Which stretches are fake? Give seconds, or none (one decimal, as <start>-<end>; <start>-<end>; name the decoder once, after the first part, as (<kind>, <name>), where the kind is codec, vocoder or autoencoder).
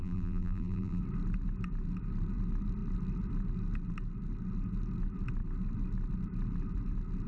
0.0-1.0 (vocoder, BigVGAN v2)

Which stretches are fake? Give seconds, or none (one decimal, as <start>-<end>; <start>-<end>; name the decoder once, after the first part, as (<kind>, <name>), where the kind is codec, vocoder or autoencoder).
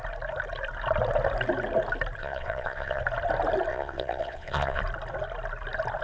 2.2-3.0 (vocoder, WaveNeXt); 3.7-4.8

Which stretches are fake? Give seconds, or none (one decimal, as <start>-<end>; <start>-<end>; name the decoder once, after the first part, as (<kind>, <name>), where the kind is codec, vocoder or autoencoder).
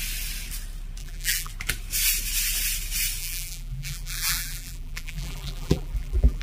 1.0-1.5 (vocoder, BigVGAN v2); 3.2-6.4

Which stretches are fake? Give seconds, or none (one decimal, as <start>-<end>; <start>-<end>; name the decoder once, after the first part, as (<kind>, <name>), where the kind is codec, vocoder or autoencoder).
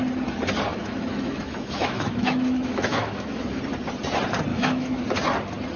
0.7-3.6 (autoencoder, DAC-VAE); 4.5-5.0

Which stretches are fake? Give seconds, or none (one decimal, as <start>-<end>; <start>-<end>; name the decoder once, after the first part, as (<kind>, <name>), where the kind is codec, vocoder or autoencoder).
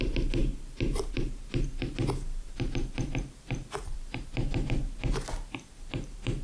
0.0-6.4 (vocoder, BigVGAN v2)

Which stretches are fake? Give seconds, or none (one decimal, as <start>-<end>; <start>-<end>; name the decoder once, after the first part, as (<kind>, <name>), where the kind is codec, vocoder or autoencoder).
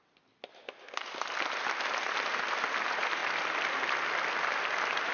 3.2-4.4 (vocoder, BigVGAN v2)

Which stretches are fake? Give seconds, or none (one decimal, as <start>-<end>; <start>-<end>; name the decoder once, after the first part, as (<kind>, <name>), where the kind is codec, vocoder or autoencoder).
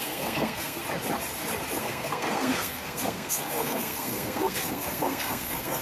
0.0-0.8 (codec, SNAC); 1.8-5.8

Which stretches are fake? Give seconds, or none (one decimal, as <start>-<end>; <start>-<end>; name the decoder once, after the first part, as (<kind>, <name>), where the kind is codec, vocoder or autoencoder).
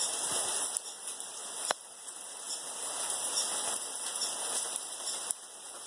none